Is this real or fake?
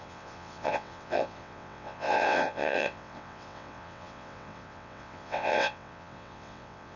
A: fake